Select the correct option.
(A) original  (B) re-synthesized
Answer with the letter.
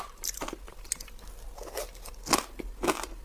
A